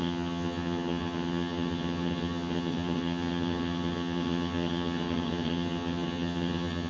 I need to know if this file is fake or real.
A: fake